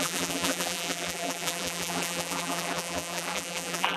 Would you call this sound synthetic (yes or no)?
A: yes